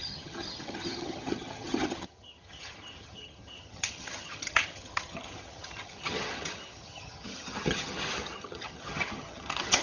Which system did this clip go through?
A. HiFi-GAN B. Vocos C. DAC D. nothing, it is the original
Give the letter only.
A